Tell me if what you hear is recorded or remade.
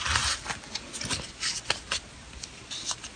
recorded